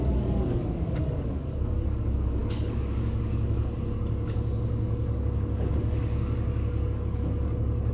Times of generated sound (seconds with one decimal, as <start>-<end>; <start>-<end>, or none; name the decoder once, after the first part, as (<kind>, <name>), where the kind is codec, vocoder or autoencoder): 0.0-7.9 (codec, DAC)